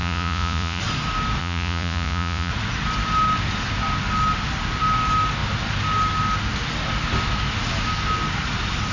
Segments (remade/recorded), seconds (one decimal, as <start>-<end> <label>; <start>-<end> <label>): 0.0-0.8 remade; 0.8-1.4 recorded; 1.4-2.5 remade; 2.5-8.9 recorded